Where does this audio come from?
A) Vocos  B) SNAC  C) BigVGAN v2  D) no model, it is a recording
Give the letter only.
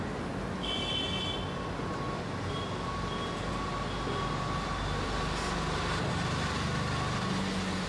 D